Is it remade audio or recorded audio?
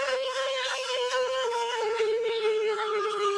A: remade